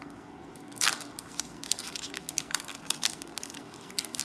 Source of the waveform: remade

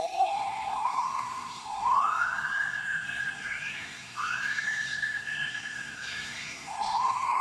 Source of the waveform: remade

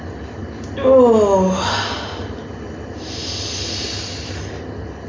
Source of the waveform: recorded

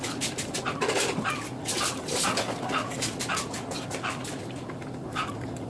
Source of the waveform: recorded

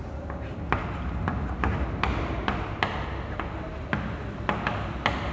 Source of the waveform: recorded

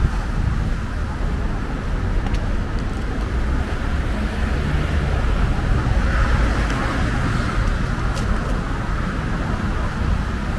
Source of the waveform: recorded